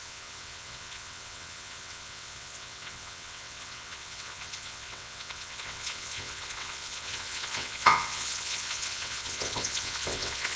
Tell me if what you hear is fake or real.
fake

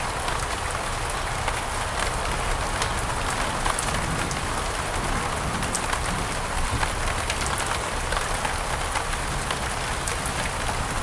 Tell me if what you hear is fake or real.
real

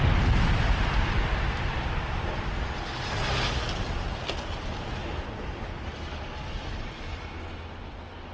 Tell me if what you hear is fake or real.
real